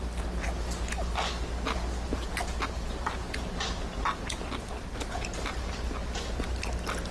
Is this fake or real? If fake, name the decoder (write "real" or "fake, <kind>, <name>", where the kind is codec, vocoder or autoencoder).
real